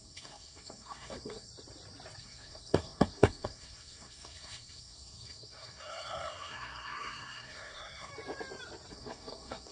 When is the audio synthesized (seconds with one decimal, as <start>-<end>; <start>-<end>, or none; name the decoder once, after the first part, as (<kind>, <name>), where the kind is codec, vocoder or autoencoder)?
0.0-1.5 (codec, SNAC); 2.2-8.1; 8.9-9.7